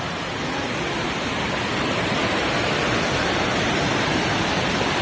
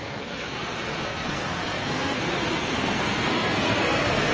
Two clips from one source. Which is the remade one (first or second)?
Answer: second